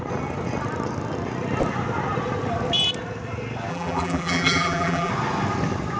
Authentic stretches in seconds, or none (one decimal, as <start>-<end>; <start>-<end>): 0.0-3.7; 5.1-6.0